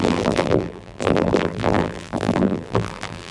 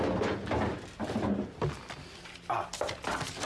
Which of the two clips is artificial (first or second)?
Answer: first